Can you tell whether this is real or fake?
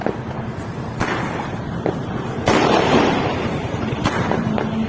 fake